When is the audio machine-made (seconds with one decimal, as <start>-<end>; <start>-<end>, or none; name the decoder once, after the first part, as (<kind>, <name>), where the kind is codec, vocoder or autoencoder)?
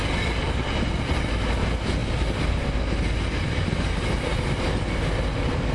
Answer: none